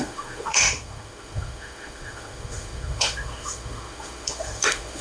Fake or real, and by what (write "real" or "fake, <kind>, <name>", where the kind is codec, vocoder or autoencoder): fake, autoencoder, DAC-VAE